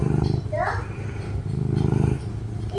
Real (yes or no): yes